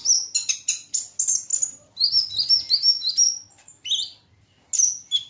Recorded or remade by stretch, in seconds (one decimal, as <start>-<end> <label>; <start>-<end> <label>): 0.0-5.3 recorded